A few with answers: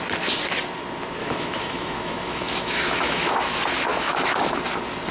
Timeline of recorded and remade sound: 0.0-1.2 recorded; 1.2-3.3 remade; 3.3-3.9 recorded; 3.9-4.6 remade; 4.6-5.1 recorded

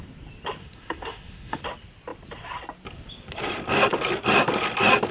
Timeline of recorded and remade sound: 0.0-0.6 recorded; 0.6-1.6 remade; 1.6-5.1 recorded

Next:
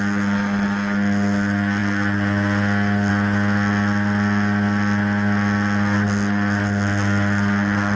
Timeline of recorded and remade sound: 0.0-8.0 recorded

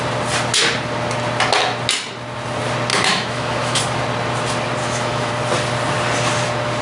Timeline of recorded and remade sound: 0.0-2.9 recorded; 2.9-3.8 remade; 3.8-4.8 recorded; 4.8-5.3 remade; 5.3-6.8 recorded

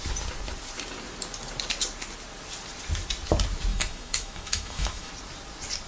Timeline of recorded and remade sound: 0.0-3.7 recorded; 3.7-5.1 remade; 5.1-5.9 recorded